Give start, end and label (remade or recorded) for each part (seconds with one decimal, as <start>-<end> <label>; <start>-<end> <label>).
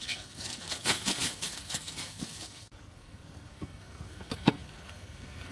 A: 0.0-5.5 remade